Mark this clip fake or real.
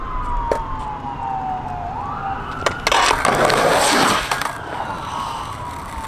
real